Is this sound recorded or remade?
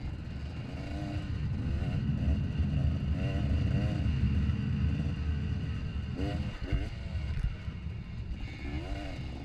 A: recorded